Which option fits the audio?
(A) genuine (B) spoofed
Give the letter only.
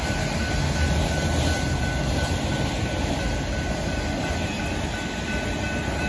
A